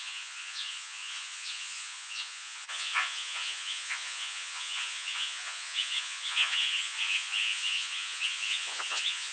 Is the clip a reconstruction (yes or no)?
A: yes